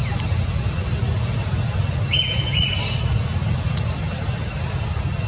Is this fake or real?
real